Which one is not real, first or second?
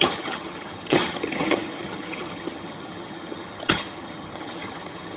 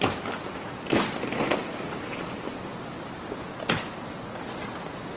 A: first